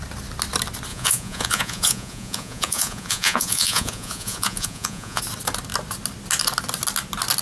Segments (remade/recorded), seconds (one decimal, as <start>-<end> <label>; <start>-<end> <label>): 0.0-0.9 recorded; 0.9-5.2 remade; 5.2-7.4 recorded